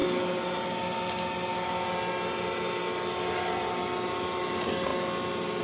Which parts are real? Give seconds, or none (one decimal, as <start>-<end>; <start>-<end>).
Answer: 0.0-5.6

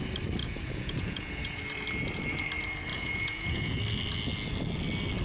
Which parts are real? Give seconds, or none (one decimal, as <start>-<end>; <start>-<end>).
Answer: 0.0-0.4; 1.6-2.9; 3.8-5.2

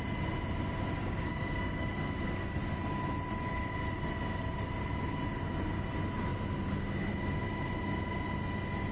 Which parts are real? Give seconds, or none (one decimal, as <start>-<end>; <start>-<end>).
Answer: 0.0-1.0; 2.6-8.9

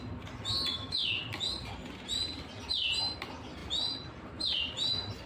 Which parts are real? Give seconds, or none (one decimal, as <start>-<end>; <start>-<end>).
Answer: 0.0-0.7; 1.2-5.3